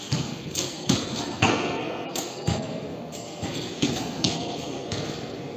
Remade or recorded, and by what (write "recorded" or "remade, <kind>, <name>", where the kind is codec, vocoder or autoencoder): remade, codec, SNAC